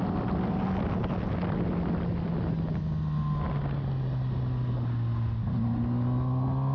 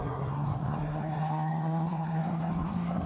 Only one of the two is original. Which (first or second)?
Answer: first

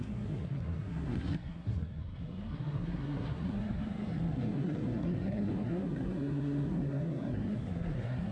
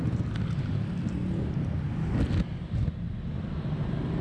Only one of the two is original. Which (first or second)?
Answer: second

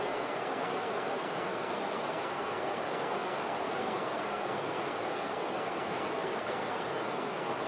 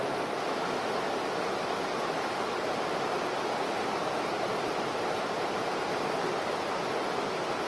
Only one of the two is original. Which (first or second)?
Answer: second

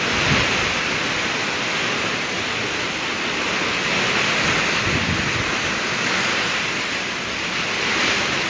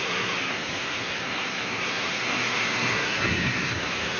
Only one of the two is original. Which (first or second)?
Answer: first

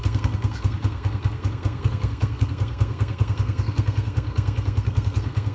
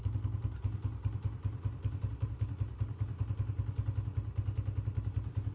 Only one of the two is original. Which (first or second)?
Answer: second